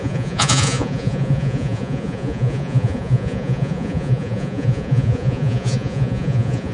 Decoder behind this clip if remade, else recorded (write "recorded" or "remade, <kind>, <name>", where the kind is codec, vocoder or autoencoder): remade, vocoder, Vocos